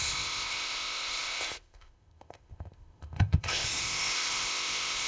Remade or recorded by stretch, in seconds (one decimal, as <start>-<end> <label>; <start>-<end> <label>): 0.0-5.1 remade